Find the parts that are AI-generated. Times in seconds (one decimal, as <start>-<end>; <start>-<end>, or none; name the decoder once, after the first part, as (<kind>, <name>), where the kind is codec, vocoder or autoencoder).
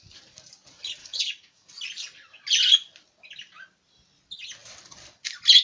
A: 1.0-1.7 (codec, DAC)